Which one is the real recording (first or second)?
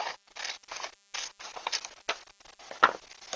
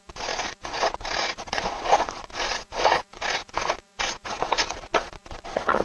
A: first